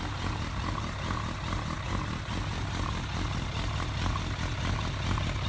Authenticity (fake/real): real